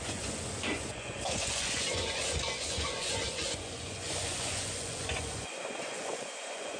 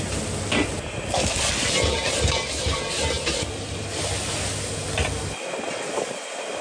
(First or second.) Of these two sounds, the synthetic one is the first